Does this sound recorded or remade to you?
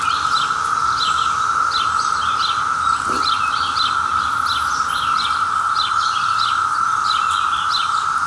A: recorded